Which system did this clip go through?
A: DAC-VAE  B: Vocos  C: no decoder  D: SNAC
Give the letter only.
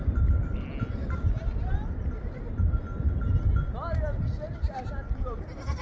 C